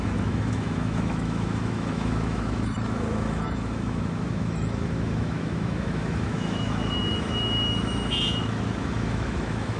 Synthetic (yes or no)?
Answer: yes